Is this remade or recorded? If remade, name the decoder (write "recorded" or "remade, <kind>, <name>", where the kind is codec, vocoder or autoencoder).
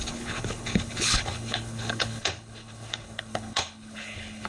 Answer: remade, codec, HILCodec